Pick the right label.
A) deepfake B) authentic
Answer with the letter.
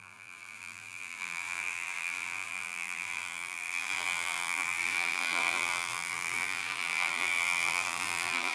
A